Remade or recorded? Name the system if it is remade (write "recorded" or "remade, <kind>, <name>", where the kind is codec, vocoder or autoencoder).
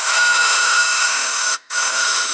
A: remade, autoencoder, DAC-VAE